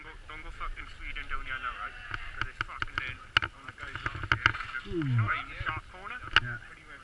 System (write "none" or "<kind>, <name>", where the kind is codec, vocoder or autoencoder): none